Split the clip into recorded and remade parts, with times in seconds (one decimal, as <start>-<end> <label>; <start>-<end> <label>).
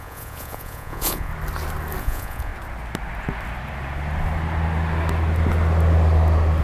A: 0.0-1.3 remade; 1.3-2.0 recorded; 2.0-2.5 remade; 2.5-6.6 recorded